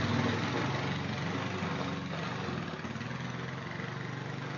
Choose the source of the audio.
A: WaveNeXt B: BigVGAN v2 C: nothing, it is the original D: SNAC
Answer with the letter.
C